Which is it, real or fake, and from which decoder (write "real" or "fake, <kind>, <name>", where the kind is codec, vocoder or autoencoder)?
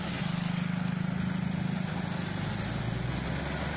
real